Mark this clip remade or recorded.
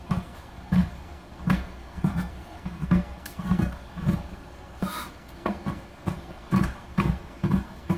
remade